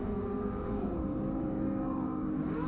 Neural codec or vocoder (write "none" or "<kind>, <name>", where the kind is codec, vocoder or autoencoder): codec, DAC